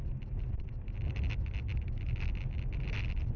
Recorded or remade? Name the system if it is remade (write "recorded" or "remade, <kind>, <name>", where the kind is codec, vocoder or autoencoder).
recorded